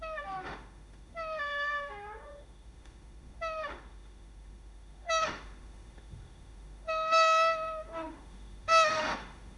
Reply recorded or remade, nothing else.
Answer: remade